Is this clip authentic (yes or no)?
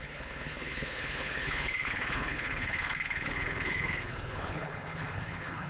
no